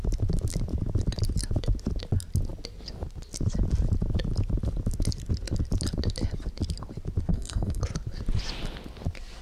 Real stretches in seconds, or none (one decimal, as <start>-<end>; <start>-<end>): 0.0-7.3; 7.8-9.4